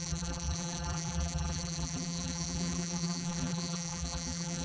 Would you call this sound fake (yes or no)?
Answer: yes